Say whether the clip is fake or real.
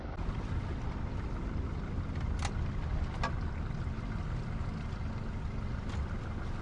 real